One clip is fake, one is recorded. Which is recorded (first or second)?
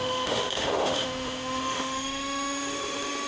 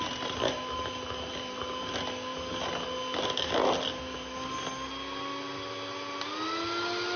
second